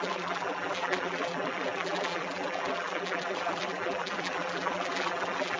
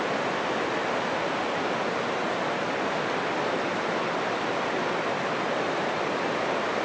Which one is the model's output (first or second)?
first